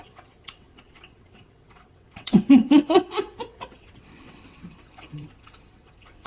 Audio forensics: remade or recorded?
remade